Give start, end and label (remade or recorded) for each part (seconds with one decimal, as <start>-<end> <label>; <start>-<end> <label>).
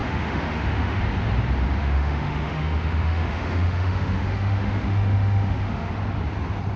0.0-1.0 remade; 1.0-1.8 recorded; 1.8-5.9 remade; 5.9-6.8 recorded